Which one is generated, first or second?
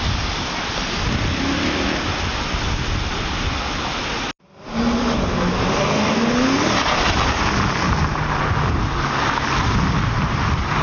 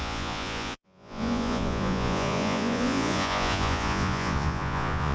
second